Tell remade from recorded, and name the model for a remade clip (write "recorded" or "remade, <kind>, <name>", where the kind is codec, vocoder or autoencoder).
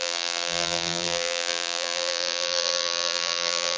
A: remade, vocoder, BigVGAN v2